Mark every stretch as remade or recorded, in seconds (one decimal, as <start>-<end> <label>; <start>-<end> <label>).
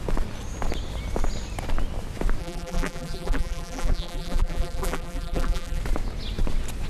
0.0-2.4 recorded; 2.4-5.8 remade; 5.8-6.9 recorded